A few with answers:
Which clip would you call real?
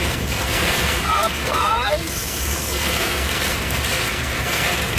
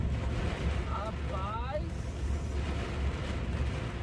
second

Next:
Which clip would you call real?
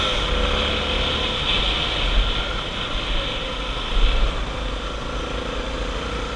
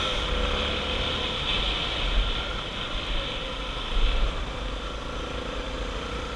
first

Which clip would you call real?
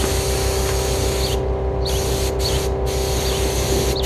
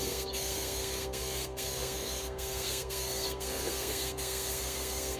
first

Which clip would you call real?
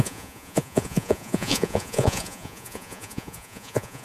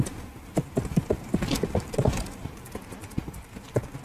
second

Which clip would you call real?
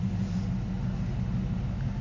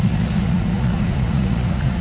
first